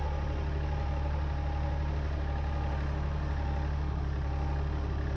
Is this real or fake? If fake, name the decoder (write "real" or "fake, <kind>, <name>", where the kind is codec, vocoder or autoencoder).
real